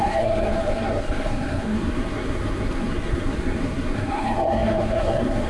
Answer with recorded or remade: remade